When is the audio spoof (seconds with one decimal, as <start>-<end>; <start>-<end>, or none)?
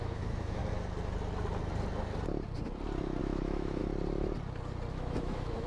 0.0-0.6; 3.2-3.8; 4.9-5.7